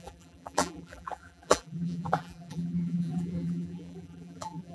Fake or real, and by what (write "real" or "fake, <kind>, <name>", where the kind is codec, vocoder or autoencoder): fake, vocoder, BigVGAN v2